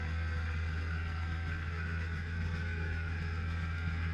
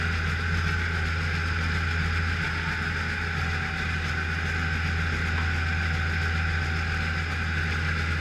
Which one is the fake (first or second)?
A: first